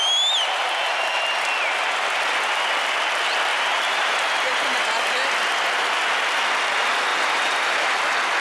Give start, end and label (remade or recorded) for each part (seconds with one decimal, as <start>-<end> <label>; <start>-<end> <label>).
0.0-3.5 recorded; 3.5-4.8 remade; 4.8-7.1 recorded; 7.1-8.0 remade; 8.0-8.4 recorded

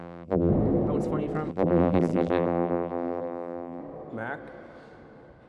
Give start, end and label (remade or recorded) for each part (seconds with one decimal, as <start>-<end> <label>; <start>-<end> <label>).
0.0-0.5 remade; 0.5-1.5 recorded; 1.5-3.8 remade; 3.8-5.5 recorded

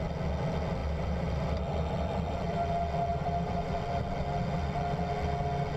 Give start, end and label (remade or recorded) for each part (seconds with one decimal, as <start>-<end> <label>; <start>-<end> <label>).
0.0-0.8 recorded; 0.8-2.7 remade; 2.7-3.1 recorded; 3.1-3.8 remade; 3.8-5.8 recorded

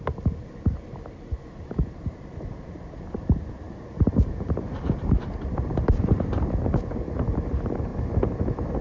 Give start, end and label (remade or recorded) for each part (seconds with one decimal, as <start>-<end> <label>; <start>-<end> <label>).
0.0-7.9 remade; 7.9-8.8 recorded

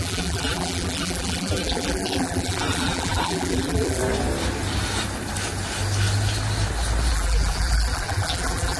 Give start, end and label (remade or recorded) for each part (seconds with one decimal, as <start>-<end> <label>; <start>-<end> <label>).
0.0-4.0 remade; 4.0-7.1 recorded; 7.1-8.8 remade

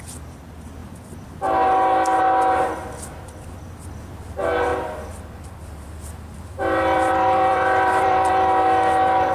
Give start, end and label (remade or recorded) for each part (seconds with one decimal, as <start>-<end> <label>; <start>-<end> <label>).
0.0-4.7 recorded; 4.7-8.3 remade; 8.3-9.3 recorded

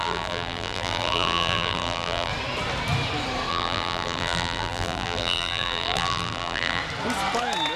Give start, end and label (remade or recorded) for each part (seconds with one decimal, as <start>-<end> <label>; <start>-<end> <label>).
0.0-2.3 remade; 2.3-3.5 recorded; 3.5-6.8 remade; 6.8-7.8 recorded

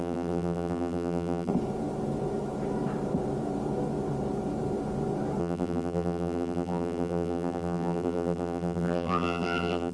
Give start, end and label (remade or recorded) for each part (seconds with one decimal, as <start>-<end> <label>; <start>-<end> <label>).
0.0-1.5 remade; 1.5-5.4 recorded; 5.4-9.9 remade